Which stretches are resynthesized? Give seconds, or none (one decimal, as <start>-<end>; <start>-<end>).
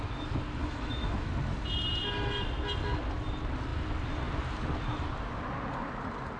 0.6-1.3